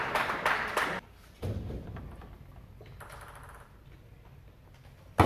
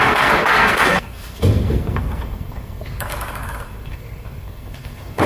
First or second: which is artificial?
second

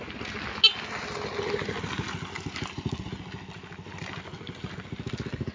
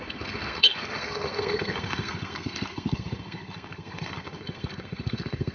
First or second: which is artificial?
second